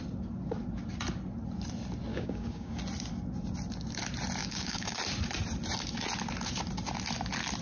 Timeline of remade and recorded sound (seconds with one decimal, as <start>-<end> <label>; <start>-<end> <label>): 0.0-2.1 recorded; 2.1-2.8 remade; 2.8-4.4 recorded; 4.4-5.0 remade; 5.0-7.6 recorded